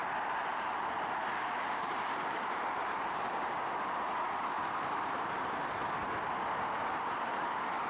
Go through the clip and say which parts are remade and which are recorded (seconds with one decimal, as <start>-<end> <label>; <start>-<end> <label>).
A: 0.0-5.8 remade; 5.8-7.0 recorded; 7.0-7.9 remade